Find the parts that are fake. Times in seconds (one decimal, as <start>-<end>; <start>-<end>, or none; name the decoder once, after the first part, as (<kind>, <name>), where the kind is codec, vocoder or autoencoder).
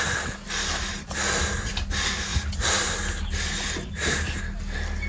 none